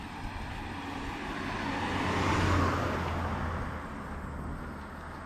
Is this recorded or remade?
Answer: recorded